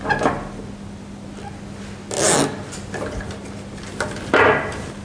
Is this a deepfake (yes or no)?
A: no